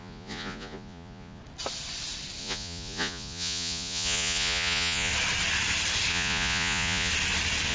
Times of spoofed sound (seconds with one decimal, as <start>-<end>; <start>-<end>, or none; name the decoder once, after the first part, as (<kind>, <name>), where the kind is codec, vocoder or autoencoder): 0.0-1.4 (vocoder, Vocos); 2.4-5.1; 6.1-7.1